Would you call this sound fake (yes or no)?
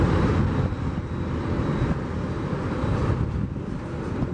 no